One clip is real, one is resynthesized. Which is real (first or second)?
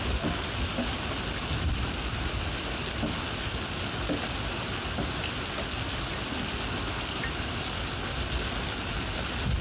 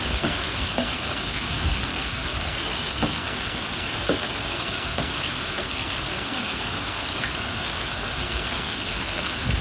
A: first